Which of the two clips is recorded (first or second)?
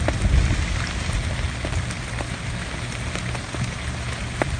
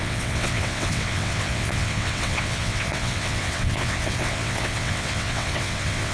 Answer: first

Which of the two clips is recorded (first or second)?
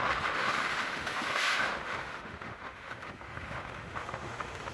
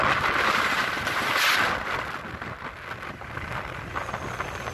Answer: second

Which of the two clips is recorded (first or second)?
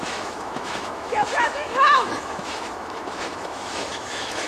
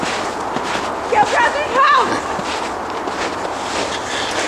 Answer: second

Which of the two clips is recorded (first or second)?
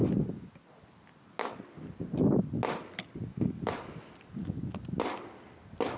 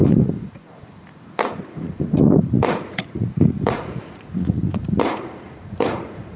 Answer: first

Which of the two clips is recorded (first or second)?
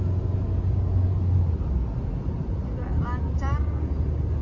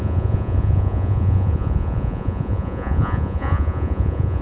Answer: first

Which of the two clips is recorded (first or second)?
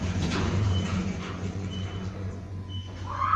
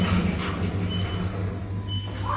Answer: second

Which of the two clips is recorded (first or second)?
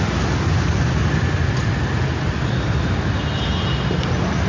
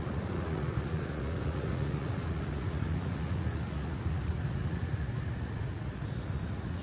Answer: first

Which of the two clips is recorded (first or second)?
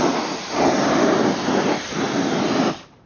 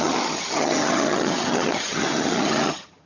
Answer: first